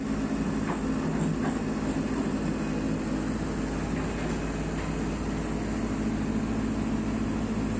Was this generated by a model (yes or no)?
no